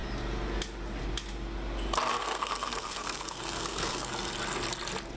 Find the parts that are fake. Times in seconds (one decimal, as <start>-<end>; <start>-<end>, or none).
2.2-4.1